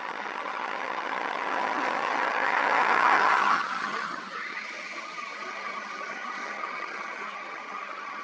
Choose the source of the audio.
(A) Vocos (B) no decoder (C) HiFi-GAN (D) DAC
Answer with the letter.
C